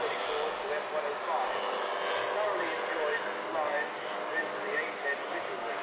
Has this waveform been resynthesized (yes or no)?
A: no